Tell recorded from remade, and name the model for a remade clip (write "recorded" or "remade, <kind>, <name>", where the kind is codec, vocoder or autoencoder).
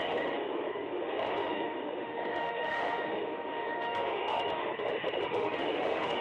remade, autoencoder, DAC-VAE